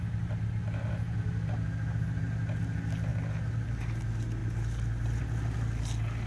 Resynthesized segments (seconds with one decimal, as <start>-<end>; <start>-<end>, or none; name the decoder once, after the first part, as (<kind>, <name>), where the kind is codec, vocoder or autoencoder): none